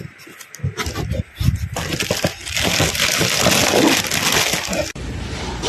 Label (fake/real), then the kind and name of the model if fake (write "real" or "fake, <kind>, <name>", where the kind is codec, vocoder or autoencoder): real